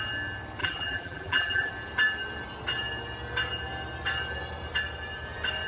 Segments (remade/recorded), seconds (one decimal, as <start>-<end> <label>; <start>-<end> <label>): 0.0-0.6 recorded; 0.6-1.7 remade; 1.7-5.7 recorded